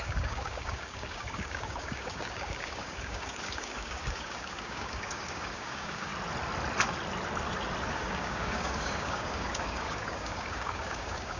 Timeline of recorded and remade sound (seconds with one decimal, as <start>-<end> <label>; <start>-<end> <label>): 0.0-6.1 remade; 6.1-7.9 recorded; 7.9-11.4 remade